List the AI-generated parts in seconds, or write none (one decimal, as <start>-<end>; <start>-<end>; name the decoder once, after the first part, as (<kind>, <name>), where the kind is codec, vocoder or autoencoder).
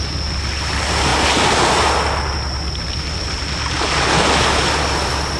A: none